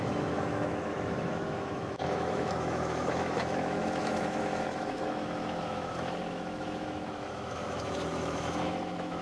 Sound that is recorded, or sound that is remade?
remade